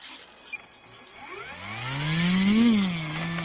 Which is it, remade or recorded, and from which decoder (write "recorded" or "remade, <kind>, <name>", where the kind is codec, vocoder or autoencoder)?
recorded